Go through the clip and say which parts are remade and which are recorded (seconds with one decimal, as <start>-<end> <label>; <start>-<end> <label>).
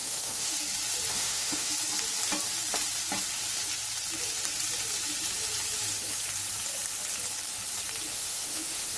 0.0-0.5 remade; 0.5-1.1 recorded; 1.1-1.7 remade; 1.7-8.1 recorded; 8.1-9.0 remade